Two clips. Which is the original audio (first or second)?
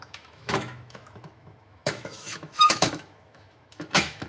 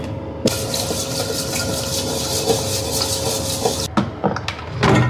second